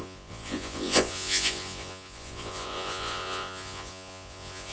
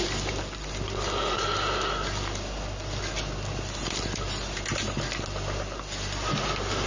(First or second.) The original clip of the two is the second